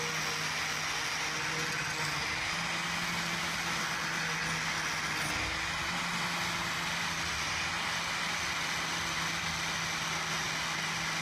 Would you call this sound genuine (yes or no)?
yes